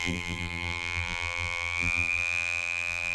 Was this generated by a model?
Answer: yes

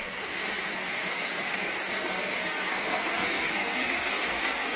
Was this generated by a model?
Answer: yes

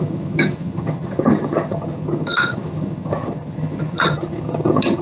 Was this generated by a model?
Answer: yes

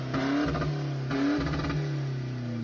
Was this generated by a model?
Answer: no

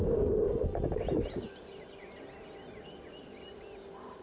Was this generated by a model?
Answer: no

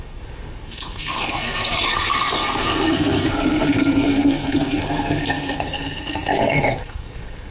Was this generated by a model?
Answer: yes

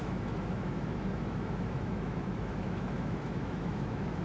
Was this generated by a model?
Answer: yes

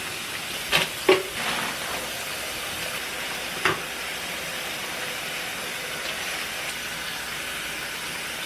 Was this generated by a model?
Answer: no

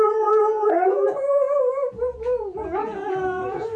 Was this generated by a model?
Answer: yes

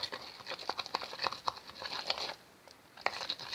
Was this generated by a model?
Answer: no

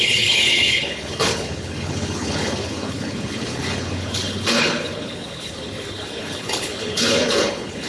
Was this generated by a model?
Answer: yes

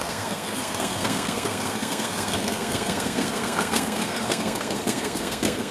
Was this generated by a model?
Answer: yes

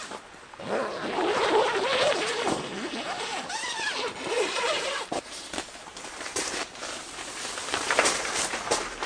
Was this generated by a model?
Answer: yes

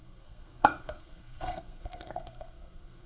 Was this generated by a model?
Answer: yes